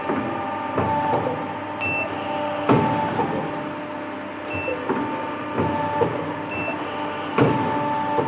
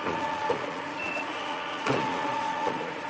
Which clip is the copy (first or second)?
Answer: second